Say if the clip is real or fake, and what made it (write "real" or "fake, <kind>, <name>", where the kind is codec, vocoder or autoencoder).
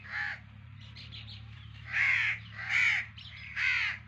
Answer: fake, vocoder, BigVGAN v2